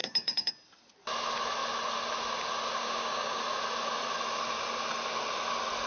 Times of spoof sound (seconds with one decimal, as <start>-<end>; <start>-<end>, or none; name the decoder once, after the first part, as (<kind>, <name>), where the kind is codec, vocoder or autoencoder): 0.0-0.5 (codec, DAC); 2.8-3.4